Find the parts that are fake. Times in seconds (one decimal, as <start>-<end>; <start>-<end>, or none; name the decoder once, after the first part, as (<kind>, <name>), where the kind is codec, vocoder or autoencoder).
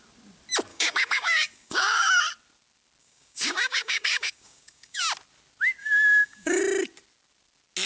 0.7-2.2 (codec, DAC); 3.0-5.0; 5.8-6.6